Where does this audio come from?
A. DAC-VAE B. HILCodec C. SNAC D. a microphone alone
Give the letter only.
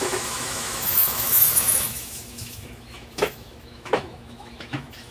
A